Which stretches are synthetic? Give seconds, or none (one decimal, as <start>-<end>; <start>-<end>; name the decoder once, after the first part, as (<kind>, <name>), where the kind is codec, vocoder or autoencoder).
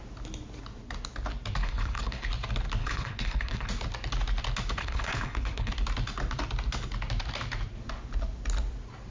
1.6-2.3 (codec, HILCodec); 2.8-3.7; 4.8-5.7